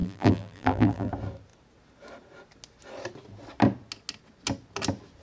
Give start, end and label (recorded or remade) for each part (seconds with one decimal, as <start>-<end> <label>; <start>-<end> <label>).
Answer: 0.0-1.1 remade; 1.1-5.2 recorded